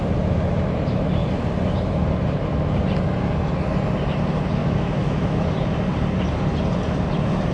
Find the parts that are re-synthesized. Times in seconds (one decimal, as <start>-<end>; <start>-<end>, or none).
4.6-5.5